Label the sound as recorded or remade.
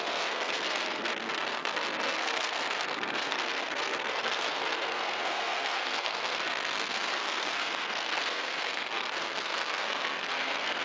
remade